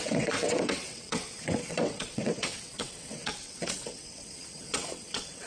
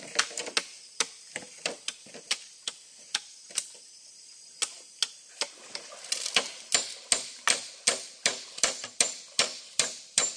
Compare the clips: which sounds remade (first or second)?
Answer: first